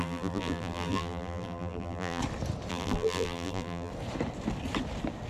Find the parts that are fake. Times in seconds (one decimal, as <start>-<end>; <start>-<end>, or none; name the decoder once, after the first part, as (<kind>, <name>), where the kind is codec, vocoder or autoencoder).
0.0-2.2 (vocoder, BigVGAN v2); 2.7-3.9